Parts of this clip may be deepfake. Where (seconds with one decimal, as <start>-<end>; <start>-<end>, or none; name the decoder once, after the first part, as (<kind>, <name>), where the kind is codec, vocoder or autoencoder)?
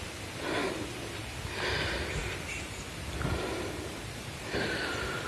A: none